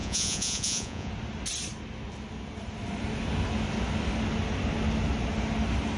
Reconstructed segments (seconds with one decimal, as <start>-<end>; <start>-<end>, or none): 0.0-1.1